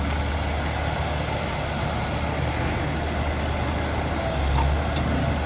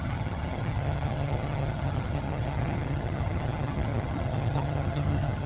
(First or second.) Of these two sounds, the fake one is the second